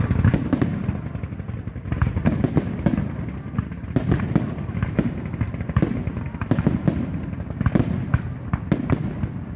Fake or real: real